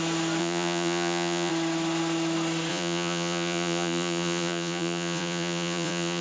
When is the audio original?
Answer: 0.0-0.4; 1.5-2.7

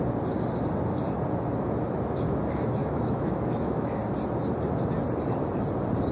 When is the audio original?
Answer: 0.0-2.8; 4.0-6.1

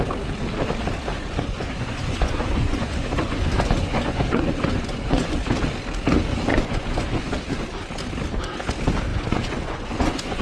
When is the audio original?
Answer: 0.0-1.1; 5.4-6.5; 7.2-9.1

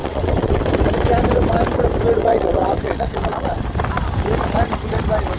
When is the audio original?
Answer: 0.6-2.2; 3.6-5.4

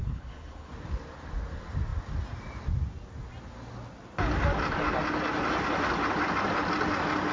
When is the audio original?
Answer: 0.7-7.3

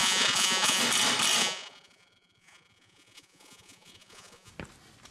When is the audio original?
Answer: 0.8-1.4; 4.5-5.1

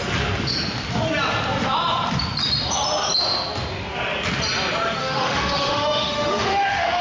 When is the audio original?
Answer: 0.0-5.0